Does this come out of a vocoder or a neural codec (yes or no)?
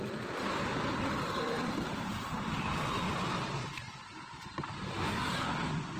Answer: no